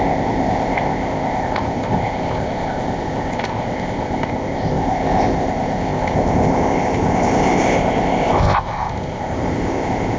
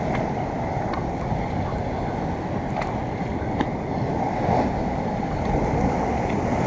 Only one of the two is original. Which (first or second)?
second